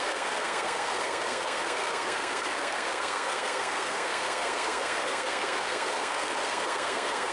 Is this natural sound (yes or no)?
no